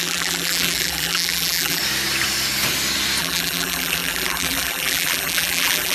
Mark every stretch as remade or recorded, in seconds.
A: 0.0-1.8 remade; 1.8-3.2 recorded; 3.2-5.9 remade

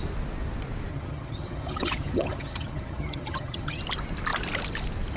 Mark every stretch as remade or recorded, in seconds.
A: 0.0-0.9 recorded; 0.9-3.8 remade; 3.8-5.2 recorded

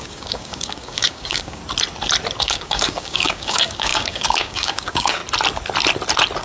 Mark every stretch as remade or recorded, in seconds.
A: 0.0-1.6 remade; 1.6-2.4 recorded; 2.4-5.2 remade; 5.2-6.4 recorded

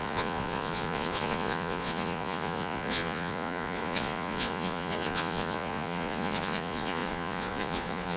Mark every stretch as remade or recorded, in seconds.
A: 0.0-8.2 remade